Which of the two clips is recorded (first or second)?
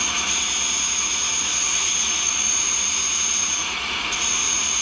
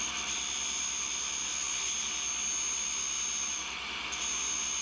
second